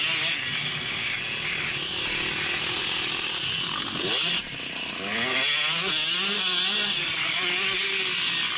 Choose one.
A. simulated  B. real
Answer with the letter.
B